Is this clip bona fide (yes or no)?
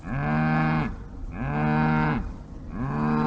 yes